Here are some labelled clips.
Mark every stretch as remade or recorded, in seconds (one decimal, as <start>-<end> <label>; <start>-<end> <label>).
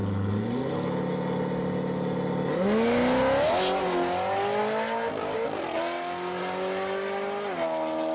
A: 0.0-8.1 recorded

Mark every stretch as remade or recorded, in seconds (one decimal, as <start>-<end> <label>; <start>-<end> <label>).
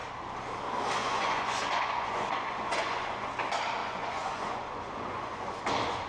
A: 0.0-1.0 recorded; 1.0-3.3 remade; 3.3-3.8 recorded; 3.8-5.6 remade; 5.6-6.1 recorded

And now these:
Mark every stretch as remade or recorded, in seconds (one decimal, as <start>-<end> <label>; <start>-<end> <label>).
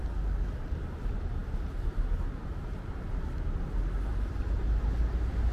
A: 0.0-5.5 recorded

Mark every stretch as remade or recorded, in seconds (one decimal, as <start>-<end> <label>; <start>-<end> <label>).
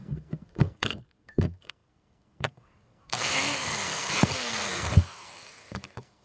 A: 0.0-6.2 remade